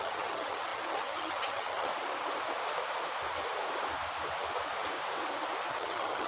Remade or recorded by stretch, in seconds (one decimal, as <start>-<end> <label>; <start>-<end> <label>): 0.0-1.9 remade; 1.9-5.7 recorded; 5.7-6.3 remade